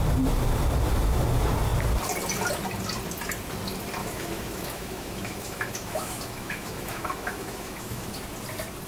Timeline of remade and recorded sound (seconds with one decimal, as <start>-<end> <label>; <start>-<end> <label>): 0.0-4.0 recorded; 4.0-8.1 remade; 8.1-8.9 recorded